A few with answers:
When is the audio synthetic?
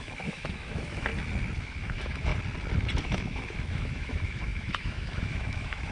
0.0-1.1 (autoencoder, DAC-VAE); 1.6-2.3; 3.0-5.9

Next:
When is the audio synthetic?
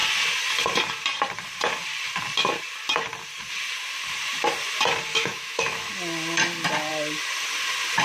5.1-5.9 (autoencoder, DAC-VAE)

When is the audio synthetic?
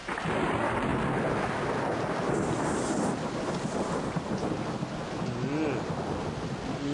none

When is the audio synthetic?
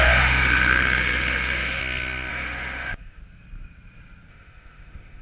0.0-1.8 (autoencoder, DAC-VAE); 2.3-3.2; 4.3-5.2